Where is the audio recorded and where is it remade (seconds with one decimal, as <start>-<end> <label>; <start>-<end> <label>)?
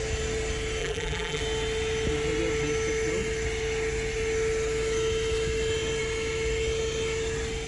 0.0-0.8 recorded; 0.8-1.4 remade; 1.4-7.7 recorded